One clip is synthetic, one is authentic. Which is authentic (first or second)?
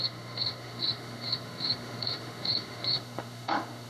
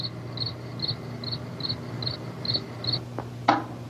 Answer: second